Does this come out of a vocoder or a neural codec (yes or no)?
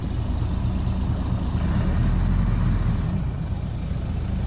no